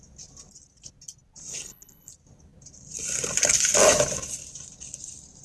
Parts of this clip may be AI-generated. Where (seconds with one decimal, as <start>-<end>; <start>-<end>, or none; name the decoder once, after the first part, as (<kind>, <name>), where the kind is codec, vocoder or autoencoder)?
1.5-2.1 (codec, HILCodec)